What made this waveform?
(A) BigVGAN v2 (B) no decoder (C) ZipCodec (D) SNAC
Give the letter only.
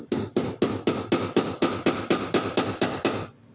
B